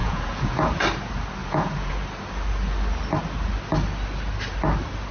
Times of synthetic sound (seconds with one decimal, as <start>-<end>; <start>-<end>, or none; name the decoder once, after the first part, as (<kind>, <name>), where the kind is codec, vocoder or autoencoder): 0.0-0.8 (vocoder, Vocos); 1.4-1.9